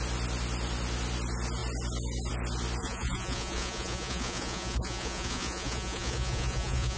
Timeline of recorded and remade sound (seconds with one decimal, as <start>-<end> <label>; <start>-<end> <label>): 0.0-2.8 recorded; 2.8-7.0 remade